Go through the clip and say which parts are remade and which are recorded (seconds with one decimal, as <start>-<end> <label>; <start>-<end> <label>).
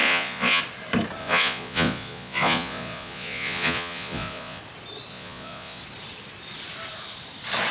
0.0-0.6 remade; 0.6-1.2 recorded; 1.2-4.6 remade; 4.6-5.1 recorded; 5.1-5.8 remade; 5.8-7.7 recorded